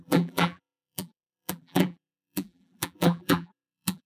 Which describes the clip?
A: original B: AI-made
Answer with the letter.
B